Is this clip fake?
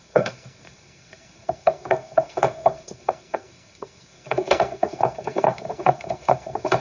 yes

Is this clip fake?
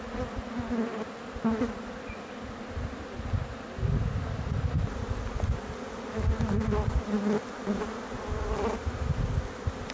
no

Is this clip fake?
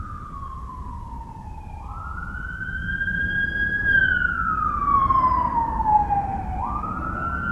no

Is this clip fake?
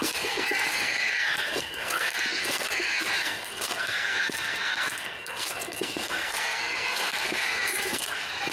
yes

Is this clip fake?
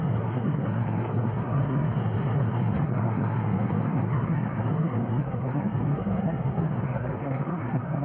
yes